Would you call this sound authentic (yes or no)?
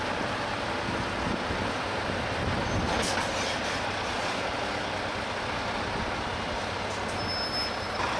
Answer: yes